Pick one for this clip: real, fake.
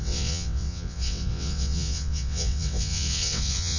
fake